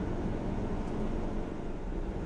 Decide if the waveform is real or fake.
fake